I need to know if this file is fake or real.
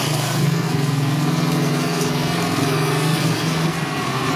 fake